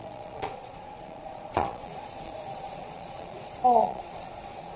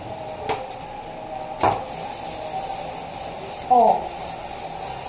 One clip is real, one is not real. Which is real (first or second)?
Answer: second